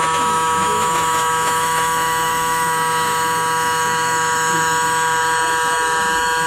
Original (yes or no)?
no